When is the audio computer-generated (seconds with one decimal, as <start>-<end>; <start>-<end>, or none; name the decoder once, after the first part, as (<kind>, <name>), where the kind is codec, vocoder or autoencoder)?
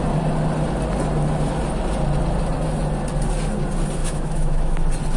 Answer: 4.0-4.8 (autoencoder, DAC-VAE)